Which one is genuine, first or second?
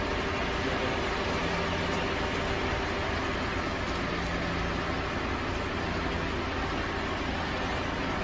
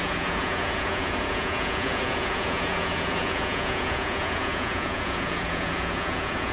first